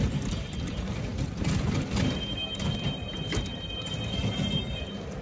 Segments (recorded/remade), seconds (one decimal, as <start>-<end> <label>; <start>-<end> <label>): 0.0-5.2 recorded